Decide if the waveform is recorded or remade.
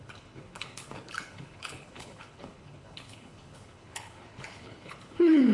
remade